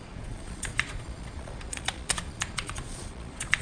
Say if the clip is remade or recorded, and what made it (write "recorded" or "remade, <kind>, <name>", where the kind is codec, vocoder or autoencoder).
remade, vocoder, Vocos